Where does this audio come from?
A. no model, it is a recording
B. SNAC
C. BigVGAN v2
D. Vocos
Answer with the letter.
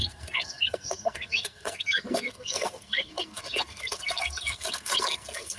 B